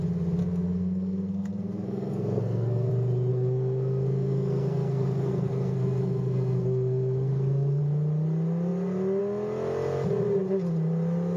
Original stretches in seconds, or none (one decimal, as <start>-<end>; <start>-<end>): 0.0-0.4; 2.9-3.3; 7.8-11.4